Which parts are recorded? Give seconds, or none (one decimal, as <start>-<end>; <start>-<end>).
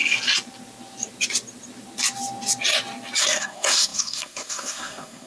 0.0-3.2